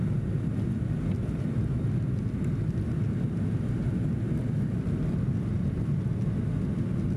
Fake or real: real